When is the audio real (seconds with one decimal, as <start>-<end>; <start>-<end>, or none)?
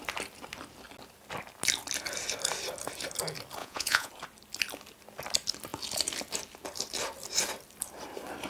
0.0-3.6; 4.1-8.5